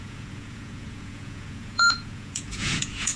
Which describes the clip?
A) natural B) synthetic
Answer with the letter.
B